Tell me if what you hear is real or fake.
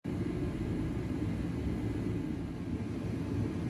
real